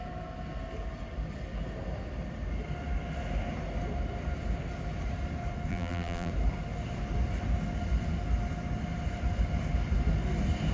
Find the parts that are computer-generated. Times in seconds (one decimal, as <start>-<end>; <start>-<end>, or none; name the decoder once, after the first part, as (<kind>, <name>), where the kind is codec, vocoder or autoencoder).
5.7-6.3 (vocoder, BigVGAN v2)